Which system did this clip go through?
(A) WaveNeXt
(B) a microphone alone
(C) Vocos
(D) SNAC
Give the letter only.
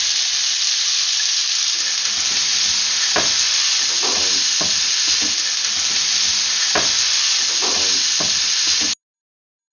B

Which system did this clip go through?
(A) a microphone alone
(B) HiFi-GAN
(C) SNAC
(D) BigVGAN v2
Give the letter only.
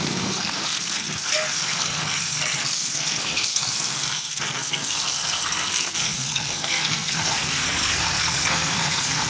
C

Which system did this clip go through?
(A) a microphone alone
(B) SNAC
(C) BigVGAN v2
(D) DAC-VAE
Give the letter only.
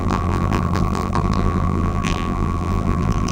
C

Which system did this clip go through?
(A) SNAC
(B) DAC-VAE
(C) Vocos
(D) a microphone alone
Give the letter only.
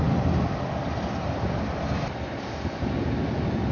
D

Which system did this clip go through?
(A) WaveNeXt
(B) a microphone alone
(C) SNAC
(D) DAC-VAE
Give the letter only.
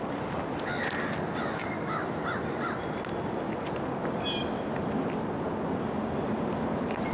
B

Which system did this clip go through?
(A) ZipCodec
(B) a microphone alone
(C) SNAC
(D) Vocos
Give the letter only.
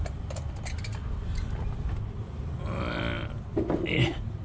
B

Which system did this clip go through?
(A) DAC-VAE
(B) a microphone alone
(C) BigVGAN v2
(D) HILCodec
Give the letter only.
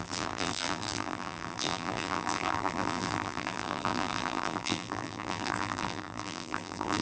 C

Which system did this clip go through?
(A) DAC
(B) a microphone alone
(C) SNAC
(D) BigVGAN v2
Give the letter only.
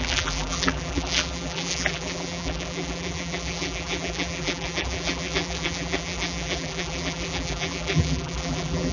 D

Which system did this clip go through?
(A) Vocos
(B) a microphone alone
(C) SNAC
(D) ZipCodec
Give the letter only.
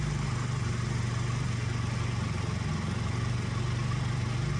B